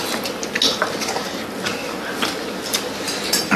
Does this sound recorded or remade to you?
recorded